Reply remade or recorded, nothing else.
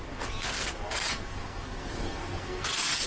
remade